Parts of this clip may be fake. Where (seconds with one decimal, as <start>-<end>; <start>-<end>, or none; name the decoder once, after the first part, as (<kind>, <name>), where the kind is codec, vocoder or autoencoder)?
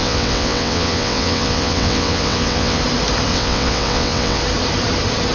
0.0-2.8 (vocoder, WaveNeXt); 3.3-4.4